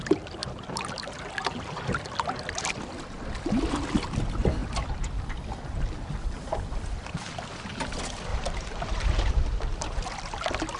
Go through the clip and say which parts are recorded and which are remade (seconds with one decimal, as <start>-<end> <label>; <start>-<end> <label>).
0.0-4.6 recorded; 4.6-5.3 remade; 5.3-8.3 recorded; 8.3-9.3 remade; 9.3-10.8 recorded